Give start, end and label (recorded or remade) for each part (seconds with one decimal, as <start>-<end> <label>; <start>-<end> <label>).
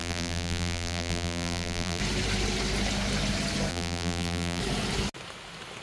0.0-2.0 remade; 2.0-3.7 recorded; 3.7-4.6 remade; 4.6-5.8 recorded